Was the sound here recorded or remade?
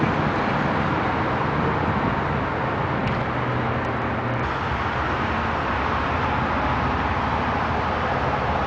recorded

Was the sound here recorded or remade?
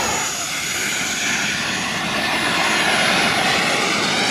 recorded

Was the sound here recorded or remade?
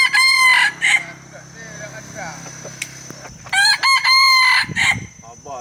recorded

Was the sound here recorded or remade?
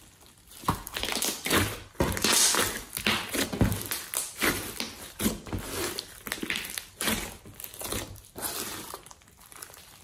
recorded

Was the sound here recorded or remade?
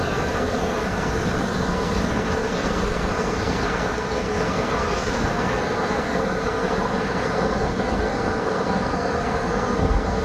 remade